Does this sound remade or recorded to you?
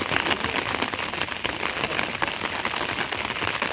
recorded